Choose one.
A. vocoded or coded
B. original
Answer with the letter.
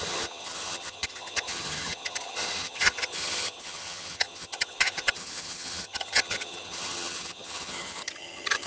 A